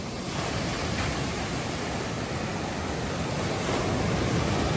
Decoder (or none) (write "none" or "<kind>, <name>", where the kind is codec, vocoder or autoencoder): none